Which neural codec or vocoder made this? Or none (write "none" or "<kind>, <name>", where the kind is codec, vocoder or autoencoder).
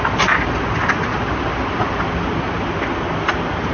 none